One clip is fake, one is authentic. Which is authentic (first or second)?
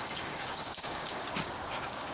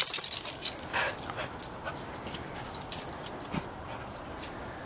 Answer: second